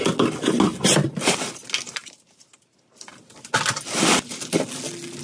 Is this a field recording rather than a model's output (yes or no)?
yes